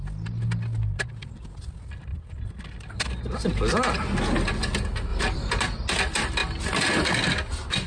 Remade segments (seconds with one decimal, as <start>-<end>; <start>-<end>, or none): 1.2-1.7; 2.1-3.2; 5.1-5.6